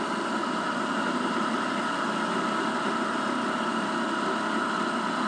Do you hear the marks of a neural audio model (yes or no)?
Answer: no